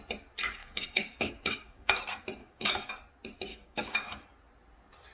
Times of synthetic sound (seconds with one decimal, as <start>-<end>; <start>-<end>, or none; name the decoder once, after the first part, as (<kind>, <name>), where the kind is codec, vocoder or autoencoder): 0.6-2.0 (codec, DAC); 2.4-2.9; 3.5-4.2